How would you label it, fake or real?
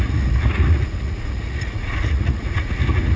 fake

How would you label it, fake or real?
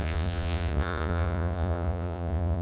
fake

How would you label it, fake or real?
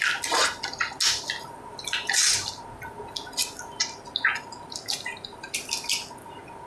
real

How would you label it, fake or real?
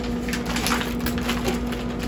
real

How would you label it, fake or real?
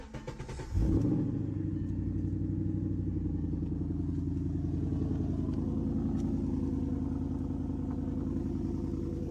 real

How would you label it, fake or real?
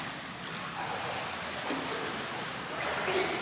real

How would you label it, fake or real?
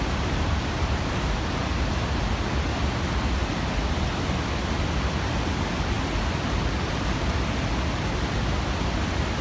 real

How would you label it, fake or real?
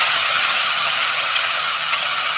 fake